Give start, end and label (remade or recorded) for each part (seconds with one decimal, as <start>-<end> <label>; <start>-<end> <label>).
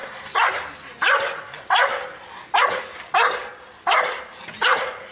0.0-5.1 recorded